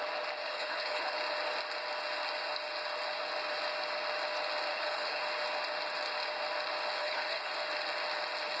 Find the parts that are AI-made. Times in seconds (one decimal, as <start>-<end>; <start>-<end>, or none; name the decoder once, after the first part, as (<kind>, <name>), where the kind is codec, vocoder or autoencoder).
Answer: 0.4-1.2 (codec, HILCodec); 4.7-5.2; 7.0-7.5